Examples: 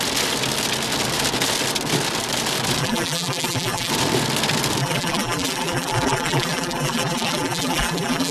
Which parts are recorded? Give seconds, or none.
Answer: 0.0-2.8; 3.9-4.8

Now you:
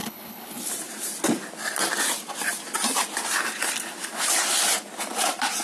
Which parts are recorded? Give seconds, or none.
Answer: 0.7-5.6